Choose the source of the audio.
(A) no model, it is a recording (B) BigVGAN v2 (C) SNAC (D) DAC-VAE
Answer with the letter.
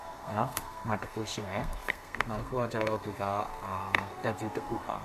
C